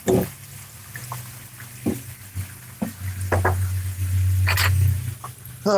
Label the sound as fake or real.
real